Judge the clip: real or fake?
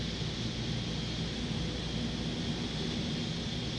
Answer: real